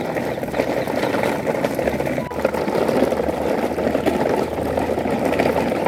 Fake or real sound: real